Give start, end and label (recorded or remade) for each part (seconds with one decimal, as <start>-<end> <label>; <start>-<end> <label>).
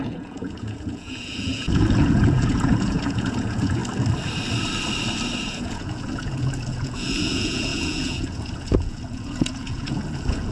0.0-3.8 remade; 3.8-5.4 recorded; 5.4-10.5 remade